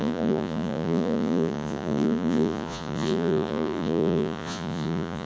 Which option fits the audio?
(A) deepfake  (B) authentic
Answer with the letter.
A